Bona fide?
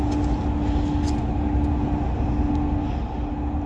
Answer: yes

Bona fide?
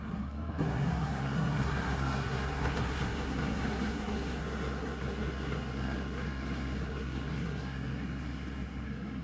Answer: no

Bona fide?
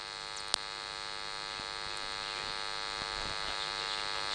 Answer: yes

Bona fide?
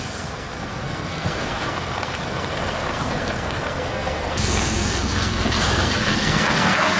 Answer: no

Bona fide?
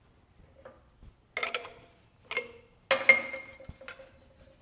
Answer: yes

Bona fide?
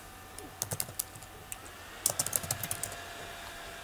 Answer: yes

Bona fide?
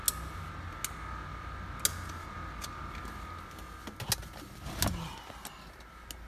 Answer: yes